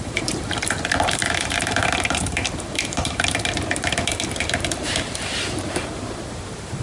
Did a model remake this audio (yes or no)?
yes